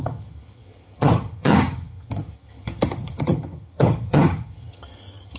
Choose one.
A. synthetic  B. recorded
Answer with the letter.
A